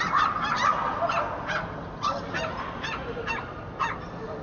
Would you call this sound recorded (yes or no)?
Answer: yes